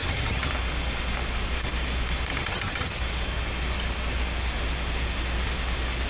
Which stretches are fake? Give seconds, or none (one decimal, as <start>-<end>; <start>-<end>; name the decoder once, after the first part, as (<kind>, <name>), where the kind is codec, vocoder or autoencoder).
0.0-0.5 (vocoder, HiFi-GAN); 2.3-3.0